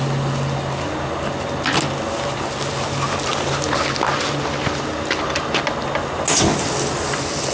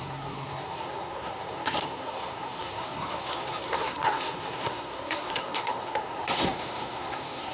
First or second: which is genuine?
first